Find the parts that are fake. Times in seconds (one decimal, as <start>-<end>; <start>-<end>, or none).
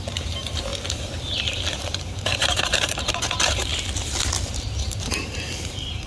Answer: 0.0-0.7; 1.7-3.7; 4.8-6.1